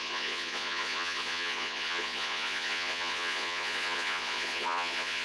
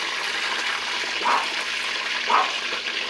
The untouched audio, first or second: second